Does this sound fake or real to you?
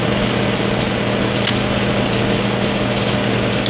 real